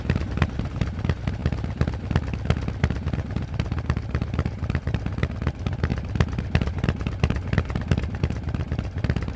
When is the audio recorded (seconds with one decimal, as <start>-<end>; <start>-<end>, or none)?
1.4-2.8